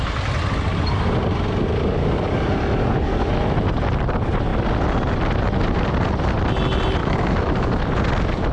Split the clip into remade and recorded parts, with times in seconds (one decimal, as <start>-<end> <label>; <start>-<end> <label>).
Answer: 0.0-2.0 recorded; 2.0-3.3 remade; 3.3-7.0 recorded; 7.0-7.8 remade; 7.8-8.5 recorded